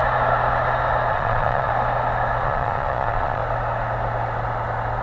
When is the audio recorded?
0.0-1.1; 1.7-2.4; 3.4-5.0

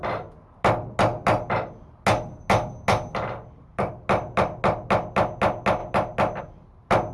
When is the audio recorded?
0.0-7.1

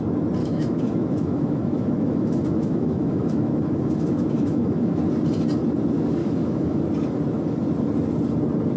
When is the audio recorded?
0.0-0.4; 5.0-6.2; 6.8-8.8